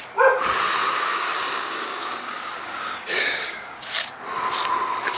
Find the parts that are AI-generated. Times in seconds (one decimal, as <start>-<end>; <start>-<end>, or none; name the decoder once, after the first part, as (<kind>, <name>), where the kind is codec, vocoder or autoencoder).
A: 0.8-3.9 (codec, DAC)